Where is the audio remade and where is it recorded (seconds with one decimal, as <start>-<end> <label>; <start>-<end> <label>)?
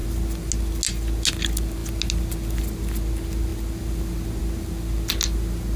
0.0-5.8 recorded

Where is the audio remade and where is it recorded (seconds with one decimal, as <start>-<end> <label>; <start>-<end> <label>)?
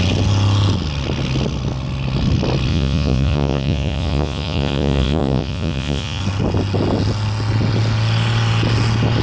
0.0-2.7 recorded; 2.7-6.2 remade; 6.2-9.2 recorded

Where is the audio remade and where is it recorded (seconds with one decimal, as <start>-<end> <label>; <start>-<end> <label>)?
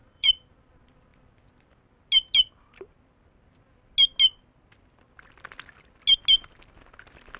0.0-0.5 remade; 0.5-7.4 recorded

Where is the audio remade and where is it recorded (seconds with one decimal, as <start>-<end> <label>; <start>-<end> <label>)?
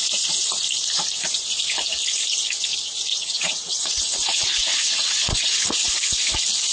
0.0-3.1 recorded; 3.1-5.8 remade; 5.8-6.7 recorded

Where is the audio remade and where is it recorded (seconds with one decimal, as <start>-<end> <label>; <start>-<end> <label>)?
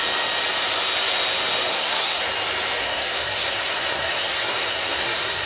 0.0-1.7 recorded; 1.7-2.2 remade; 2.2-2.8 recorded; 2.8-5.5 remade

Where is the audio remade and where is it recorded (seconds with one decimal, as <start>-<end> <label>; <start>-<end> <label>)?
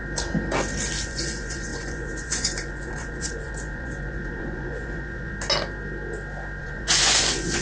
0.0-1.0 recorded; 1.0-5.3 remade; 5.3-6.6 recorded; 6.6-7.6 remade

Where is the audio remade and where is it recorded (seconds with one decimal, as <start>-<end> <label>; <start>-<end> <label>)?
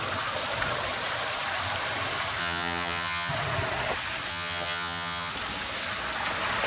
0.0-2.4 recorded; 2.4-3.3 remade; 3.3-4.3 recorded; 4.3-5.3 remade; 5.3-6.7 recorded